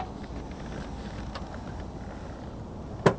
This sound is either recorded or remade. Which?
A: recorded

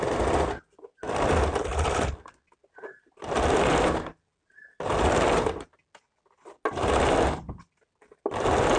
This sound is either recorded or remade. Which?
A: recorded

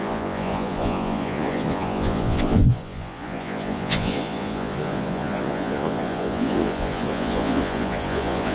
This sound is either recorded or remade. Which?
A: remade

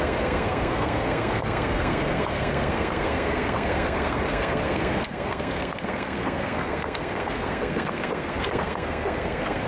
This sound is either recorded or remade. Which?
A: remade